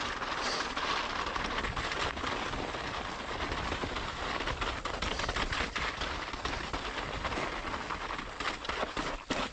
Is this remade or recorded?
recorded